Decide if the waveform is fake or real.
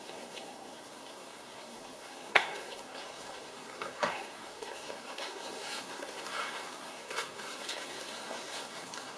fake